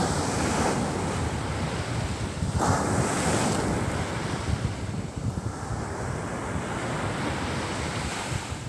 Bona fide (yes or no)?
yes